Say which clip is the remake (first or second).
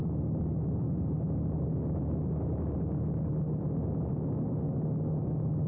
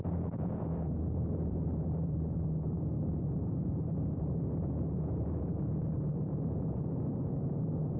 second